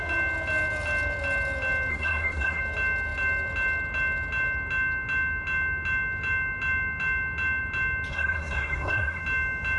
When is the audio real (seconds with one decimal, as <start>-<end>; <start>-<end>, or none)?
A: 0.0-1.9; 2.6-8.1; 9.2-9.8